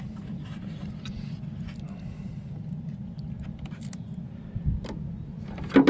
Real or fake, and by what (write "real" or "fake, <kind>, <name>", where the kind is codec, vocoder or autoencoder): real